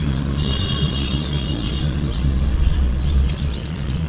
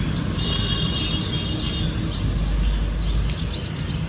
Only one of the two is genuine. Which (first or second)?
second